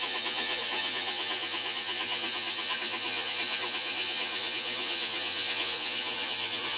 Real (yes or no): no